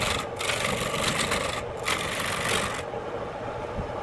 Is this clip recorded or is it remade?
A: recorded